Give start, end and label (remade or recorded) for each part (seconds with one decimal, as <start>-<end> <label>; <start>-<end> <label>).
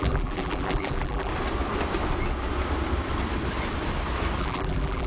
0.0-1.3 remade; 1.3-4.4 recorded; 4.4-5.1 remade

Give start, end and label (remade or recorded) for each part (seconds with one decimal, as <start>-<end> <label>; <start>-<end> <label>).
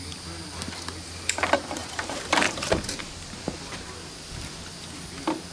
0.0-1.8 recorded; 1.8-3.0 remade; 3.0-5.5 recorded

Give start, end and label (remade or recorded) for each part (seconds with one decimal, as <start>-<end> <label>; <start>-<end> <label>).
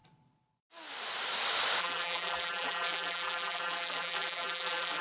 0.0-1.8 recorded; 1.8-5.0 remade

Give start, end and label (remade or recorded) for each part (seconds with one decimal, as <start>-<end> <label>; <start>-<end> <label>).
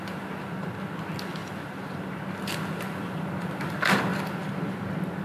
0.0-5.2 recorded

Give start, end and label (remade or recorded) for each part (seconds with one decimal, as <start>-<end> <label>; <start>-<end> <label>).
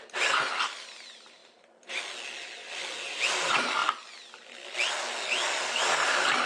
0.0-1.4 recorded; 1.4-2.0 remade; 2.0-6.5 recorded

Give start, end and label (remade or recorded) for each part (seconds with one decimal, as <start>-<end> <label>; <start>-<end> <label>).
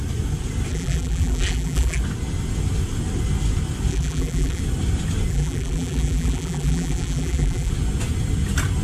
0.0-0.7 recorded; 0.7-2.0 remade; 2.0-3.9 recorded; 3.9-4.6 remade; 4.6-5.3 recorded; 5.3-7.7 remade; 7.7-8.8 recorded